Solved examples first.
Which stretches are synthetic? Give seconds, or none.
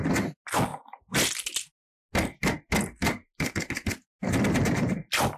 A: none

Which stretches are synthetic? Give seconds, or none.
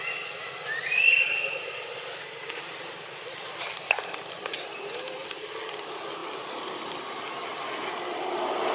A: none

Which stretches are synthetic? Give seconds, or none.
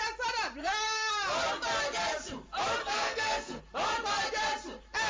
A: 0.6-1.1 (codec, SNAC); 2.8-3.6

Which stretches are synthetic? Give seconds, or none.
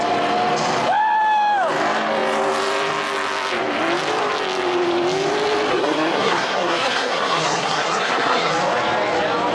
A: 5.7-8.5 (codec, SNAC)